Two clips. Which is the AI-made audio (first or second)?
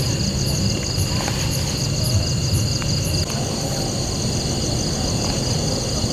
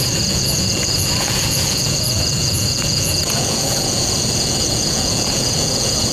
second